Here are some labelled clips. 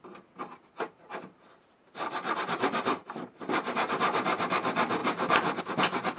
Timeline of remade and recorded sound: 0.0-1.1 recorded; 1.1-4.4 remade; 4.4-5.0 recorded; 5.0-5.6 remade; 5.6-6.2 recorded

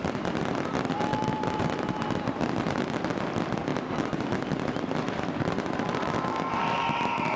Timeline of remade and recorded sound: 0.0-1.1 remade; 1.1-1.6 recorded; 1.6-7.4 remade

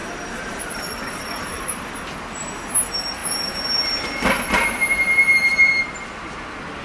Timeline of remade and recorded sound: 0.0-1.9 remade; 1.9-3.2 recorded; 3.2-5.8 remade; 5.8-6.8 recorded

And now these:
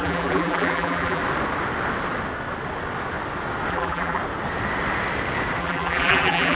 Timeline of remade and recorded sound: 0.0-1.2 remade; 1.2-3.7 recorded; 3.7-4.2 remade; 4.2-5.6 recorded; 5.6-6.5 remade